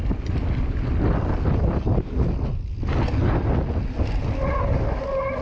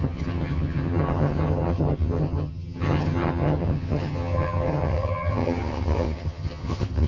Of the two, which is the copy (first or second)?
second